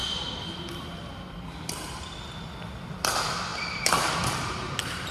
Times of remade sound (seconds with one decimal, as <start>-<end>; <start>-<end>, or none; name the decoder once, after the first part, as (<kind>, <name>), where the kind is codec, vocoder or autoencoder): 3.5-4.1 (vocoder, BigVGAN v2)